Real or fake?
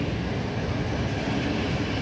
real